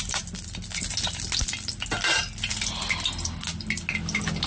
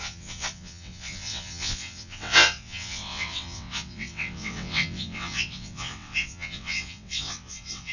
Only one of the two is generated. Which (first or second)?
second